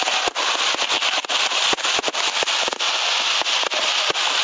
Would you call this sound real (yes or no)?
yes